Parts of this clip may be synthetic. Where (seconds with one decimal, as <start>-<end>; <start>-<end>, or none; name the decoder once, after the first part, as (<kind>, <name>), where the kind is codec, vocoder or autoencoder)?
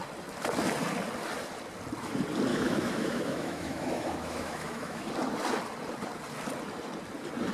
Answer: 2.5-5.1 (autoencoder, DAC-VAE)